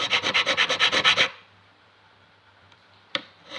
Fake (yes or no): yes